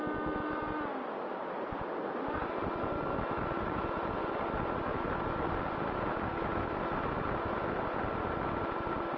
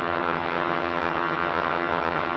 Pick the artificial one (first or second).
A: second